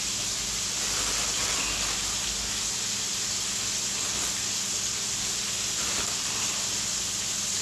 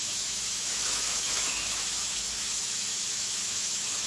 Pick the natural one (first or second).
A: first